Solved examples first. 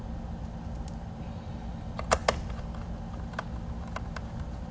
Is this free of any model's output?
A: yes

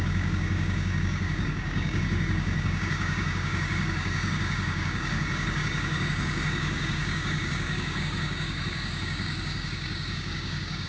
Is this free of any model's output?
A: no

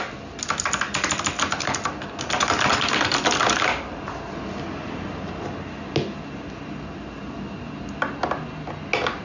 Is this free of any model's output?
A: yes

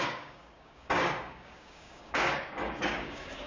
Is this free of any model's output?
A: no